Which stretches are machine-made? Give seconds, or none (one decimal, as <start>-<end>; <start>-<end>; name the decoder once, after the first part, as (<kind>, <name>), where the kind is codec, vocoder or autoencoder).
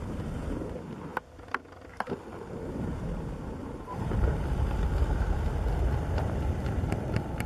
none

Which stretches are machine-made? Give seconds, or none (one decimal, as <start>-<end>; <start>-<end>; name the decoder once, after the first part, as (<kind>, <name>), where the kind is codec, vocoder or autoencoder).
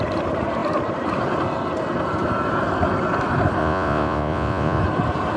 3.6-4.8 (vocoder, Vocos)